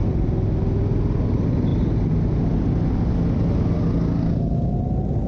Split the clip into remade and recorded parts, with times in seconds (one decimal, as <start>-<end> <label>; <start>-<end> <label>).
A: 0.0-5.3 recorded